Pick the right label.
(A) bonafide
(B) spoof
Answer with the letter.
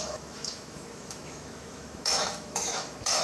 B